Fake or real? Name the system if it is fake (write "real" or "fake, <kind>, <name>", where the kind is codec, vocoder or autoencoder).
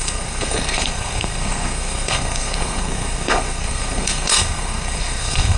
fake, codec, SNAC